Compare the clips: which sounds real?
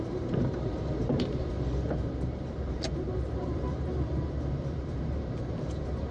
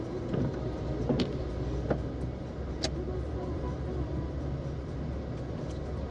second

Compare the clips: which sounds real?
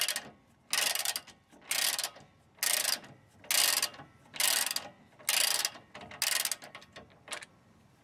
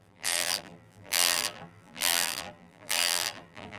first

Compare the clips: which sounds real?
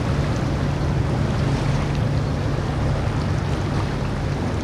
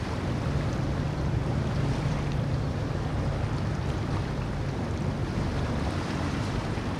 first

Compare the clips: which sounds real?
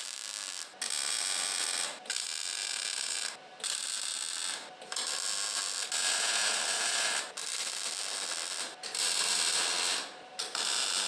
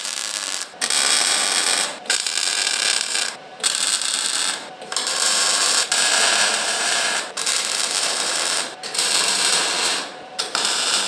first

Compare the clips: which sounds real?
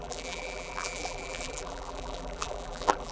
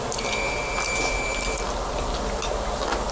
second